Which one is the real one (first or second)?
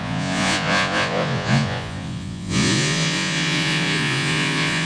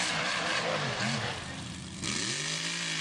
second